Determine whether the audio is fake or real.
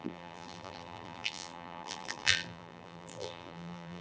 fake